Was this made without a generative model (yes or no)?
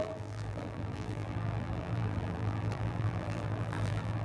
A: no